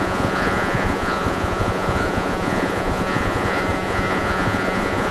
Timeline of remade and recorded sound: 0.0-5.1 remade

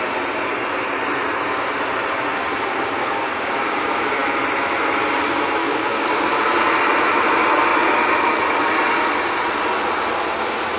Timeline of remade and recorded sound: 0.0-3.0 recorded; 3.0-3.8 remade; 3.8-5.6 recorded; 5.6-6.1 remade; 6.1-10.8 recorded

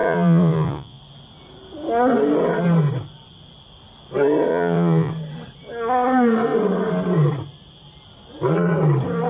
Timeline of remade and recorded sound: 0.0-1.0 remade; 1.0-4.5 recorded; 4.5-5.1 remade; 5.1-9.3 recorded